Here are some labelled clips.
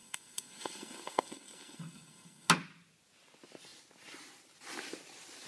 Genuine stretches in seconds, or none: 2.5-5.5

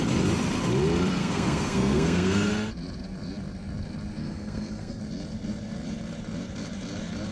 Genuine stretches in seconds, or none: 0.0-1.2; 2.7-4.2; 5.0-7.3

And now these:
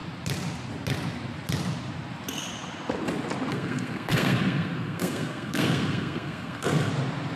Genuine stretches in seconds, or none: 0.0-3.5; 6.9-7.4

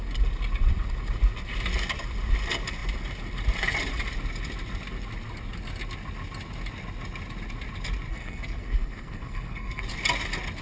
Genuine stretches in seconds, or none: 0.0-8.1; 9.8-10.6

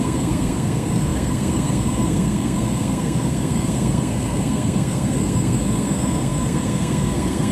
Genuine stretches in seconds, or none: none

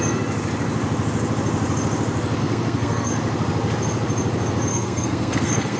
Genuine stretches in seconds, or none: 0.0-2.4; 3.1-4.7

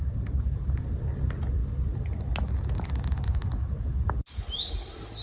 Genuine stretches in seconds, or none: 0.0-5.2